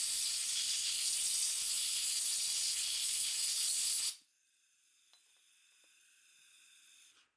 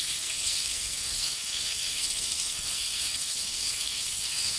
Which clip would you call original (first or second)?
first